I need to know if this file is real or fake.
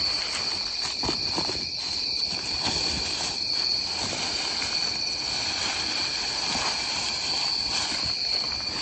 real